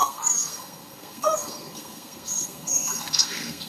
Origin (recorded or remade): remade